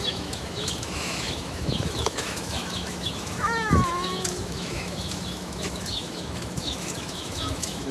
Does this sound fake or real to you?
fake